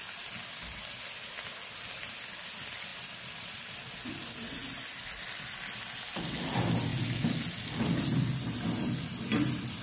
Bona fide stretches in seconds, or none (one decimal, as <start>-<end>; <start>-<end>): 0.0-2.9; 4.1-9.8